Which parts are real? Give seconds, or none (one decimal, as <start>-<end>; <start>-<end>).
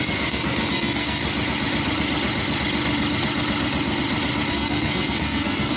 1.2-4.5